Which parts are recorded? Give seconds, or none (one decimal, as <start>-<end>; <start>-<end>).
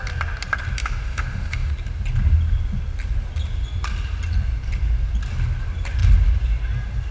0.0-0.8; 1.7-7.1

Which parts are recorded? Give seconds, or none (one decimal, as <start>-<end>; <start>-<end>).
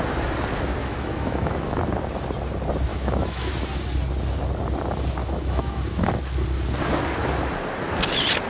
0.0-0.8; 1.8-2.9; 3.5-5.2; 6.1-8.5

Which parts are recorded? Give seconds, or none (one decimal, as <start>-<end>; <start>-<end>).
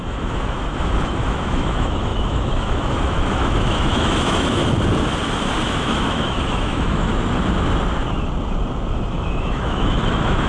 4.6-5.6; 7.1-9.1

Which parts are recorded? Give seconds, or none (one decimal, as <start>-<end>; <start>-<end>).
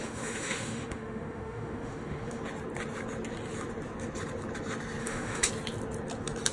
2.4-5.0; 5.5-6.5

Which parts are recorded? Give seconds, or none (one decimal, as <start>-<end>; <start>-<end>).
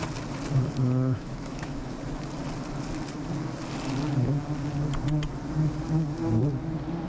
0.0-0.8; 1.9-7.1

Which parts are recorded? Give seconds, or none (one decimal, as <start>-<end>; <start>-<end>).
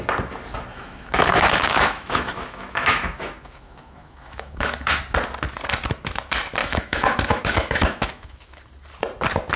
0.0-0.7; 5.0-6.6; 8.6-9.6